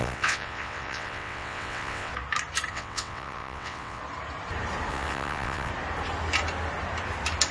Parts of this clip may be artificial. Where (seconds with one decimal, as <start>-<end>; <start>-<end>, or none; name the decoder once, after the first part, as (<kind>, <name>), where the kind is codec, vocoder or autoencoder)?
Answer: 0.0-2.1 (vocoder, WaveNeXt); 2.7-4.0; 4.9-5.7